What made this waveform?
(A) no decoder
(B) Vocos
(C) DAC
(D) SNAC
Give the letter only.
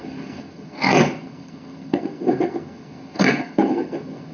D